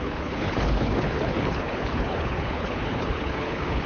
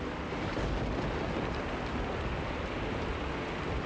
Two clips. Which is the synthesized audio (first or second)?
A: first